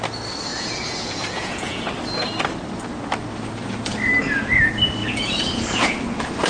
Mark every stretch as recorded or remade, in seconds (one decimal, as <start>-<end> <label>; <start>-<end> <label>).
0.0-0.5 recorded; 0.5-1.8 remade; 1.8-5.0 recorded; 5.0-6.0 remade; 6.0-6.5 recorded